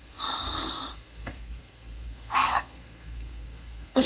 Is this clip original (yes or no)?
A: no